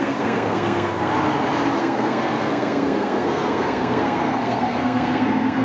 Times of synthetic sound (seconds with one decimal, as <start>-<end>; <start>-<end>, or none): 0.0-1.1; 1.8-5.6